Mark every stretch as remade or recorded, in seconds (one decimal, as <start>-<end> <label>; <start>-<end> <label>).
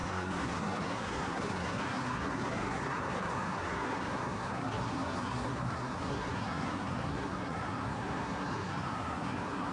0.0-9.7 remade